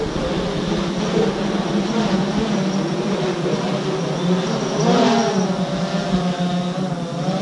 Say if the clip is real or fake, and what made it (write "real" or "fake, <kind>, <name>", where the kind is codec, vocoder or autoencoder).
real